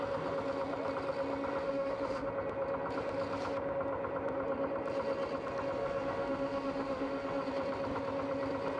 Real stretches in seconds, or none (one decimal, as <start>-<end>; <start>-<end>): 0.0-1.6; 2.3-5.8; 7.5-8.8